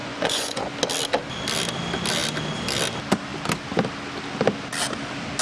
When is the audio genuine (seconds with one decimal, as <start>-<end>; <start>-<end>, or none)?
0.7-5.4